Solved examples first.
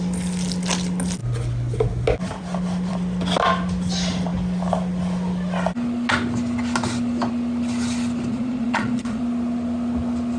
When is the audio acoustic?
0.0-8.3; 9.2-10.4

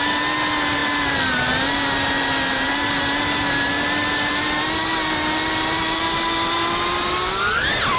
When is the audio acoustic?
0.0-8.0

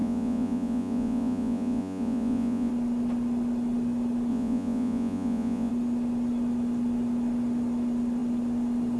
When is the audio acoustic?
2.7-4.3; 5.7-9.0

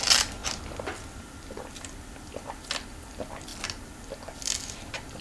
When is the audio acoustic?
0.0-5.2

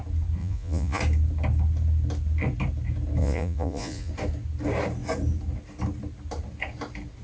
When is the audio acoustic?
0.0-0.4; 1.0-3.2; 4.1-7.2

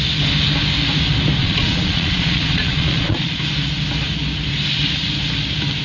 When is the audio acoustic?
0.0-1.4; 3.4-5.8

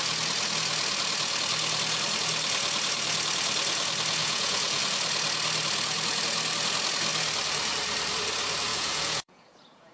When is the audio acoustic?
0.0-4.2; 4.8-8.7

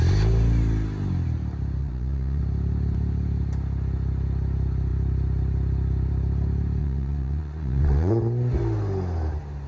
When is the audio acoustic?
0.0-1.8; 2.4-6.8; 8.1-9.7